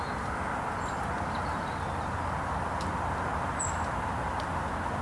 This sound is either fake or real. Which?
real